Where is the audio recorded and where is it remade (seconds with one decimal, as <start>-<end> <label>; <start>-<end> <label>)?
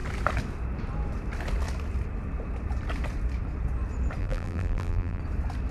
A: 0.0-4.2 recorded; 4.2-5.2 remade; 5.2-5.7 recorded